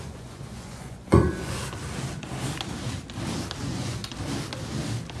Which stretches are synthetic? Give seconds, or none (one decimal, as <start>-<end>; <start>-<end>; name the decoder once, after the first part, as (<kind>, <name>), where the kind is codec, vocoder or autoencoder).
0.0-1.6 (vocoder, Vocos); 3.6-4.0